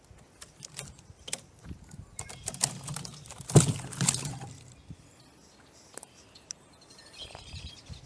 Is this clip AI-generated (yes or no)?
no